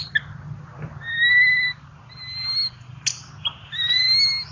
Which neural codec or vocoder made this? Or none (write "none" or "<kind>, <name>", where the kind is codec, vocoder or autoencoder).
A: none